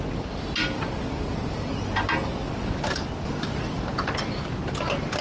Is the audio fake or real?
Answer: real